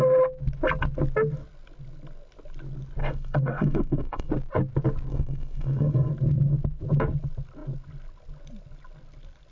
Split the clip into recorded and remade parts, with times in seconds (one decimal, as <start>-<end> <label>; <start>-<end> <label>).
0.0-3.0 recorded; 3.0-4.3 remade; 4.3-5.1 recorded; 5.1-6.1 remade; 6.1-9.5 recorded